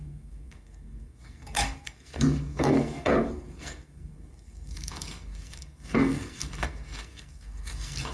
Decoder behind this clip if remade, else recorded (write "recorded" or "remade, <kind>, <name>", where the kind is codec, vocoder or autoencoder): remade, codec, SNAC